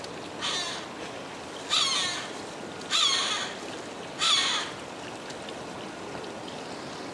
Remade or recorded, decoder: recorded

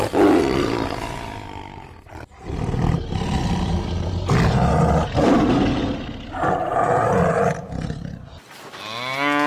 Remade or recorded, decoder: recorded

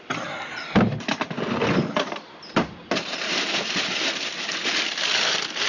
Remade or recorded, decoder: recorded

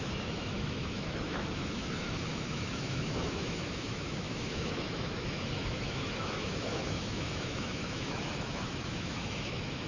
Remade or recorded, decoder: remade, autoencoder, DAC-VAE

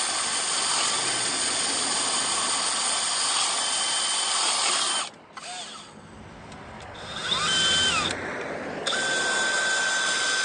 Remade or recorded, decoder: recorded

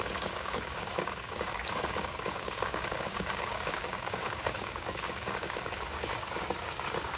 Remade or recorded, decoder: remade, codec, DAC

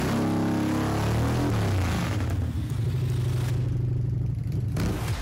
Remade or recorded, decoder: recorded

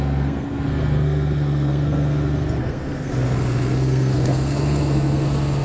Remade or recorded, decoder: remade, codec, SNAC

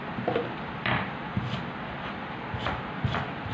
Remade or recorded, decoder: recorded